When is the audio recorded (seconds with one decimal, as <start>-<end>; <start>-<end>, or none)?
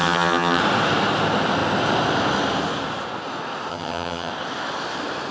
0.6-3.7; 4.3-5.3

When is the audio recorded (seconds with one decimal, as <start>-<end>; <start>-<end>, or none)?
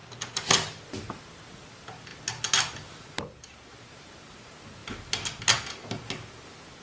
0.0-6.8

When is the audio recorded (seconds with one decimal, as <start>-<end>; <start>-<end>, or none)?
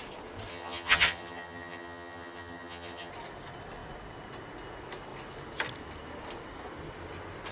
0.0-0.5; 3.1-7.5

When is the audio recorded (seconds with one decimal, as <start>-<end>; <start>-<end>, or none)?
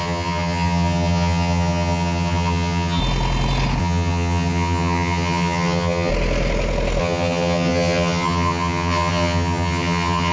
3.0-3.8; 6.1-7.0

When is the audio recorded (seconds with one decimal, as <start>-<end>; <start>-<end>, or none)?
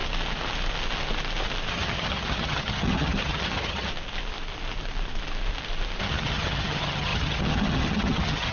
0.0-1.7; 3.9-6.0